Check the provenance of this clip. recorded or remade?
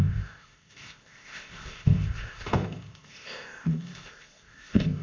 remade